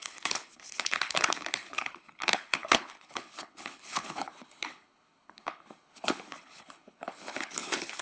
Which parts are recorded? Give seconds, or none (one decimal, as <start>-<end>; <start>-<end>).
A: none